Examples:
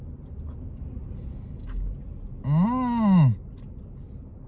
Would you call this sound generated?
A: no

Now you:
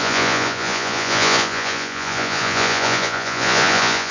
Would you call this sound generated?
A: yes